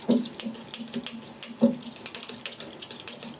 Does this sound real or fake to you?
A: real